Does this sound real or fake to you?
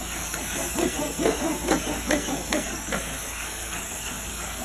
fake